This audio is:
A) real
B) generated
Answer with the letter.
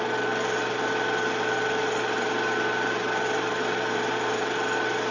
A